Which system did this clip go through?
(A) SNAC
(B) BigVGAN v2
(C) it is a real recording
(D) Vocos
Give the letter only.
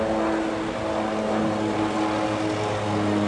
C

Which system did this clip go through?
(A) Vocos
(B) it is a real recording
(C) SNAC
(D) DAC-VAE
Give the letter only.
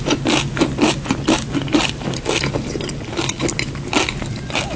B